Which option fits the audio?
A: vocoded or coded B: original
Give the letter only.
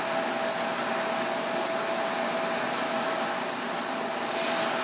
B